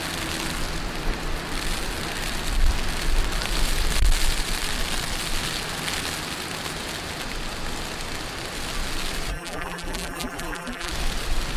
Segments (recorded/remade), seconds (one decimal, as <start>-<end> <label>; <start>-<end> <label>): 0.0-9.3 recorded; 9.3-10.9 remade; 10.9-11.6 recorded